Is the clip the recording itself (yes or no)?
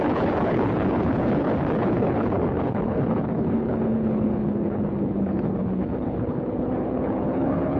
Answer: no